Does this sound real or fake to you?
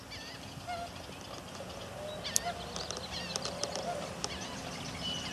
real